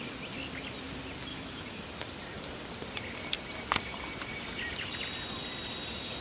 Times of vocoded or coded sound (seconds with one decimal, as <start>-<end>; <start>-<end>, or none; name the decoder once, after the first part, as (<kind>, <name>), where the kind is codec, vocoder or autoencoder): 1.3-1.8 (autoencoder, DAC-VAE)